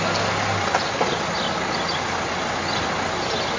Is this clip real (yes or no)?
yes